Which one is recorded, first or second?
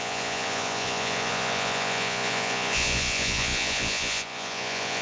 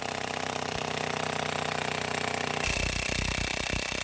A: second